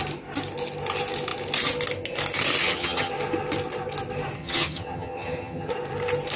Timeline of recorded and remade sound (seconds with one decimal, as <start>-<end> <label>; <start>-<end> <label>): 0.0-2.6 recorded; 2.6-3.1 remade; 3.1-4.4 recorded; 4.4-5.7 remade; 5.7-6.4 recorded